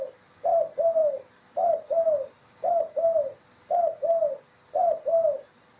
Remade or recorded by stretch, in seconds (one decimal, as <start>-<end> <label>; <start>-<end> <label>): 0.0-5.8 recorded